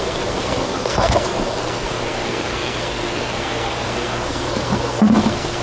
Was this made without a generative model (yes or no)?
no